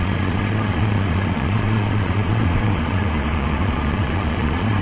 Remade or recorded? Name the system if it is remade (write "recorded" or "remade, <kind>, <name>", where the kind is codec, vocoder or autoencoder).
remade, vocoder, Vocos